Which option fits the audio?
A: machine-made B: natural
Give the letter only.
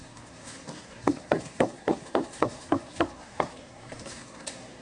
A